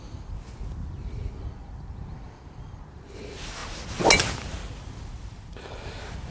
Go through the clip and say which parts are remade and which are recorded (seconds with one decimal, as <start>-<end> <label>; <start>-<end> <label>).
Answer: 0.0-6.3 recorded